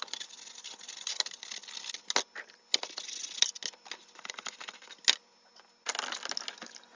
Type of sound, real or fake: real